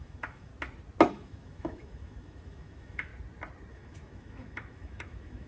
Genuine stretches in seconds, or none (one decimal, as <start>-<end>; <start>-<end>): 0.5-1.1; 3.1-3.7